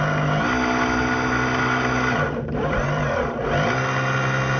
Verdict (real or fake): real